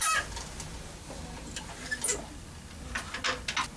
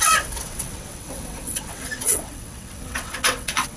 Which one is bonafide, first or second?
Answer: first